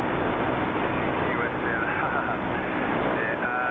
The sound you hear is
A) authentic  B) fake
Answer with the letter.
A